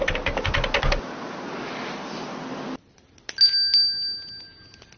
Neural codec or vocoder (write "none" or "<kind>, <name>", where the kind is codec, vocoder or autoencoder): none